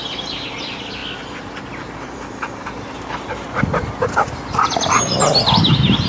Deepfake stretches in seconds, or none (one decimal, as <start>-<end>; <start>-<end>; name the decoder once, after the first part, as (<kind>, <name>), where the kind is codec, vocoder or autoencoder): none